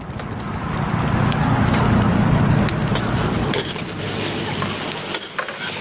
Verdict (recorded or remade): recorded